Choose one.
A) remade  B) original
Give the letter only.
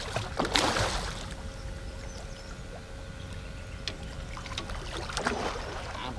B